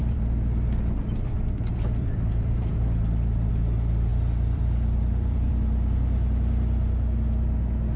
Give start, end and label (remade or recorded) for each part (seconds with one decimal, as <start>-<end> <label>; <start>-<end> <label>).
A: 0.0-3.5 remade; 3.5-4.1 recorded; 4.1-5.5 remade; 5.5-8.0 recorded